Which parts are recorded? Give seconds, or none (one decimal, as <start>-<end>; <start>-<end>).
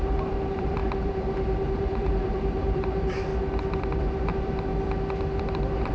3.3-4.0; 4.7-5.4